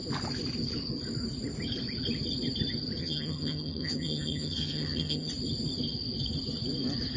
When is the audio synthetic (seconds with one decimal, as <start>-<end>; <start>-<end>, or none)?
3.0-5.3